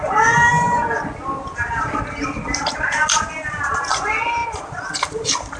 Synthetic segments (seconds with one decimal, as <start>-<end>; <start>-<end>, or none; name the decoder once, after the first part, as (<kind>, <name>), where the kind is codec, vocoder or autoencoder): none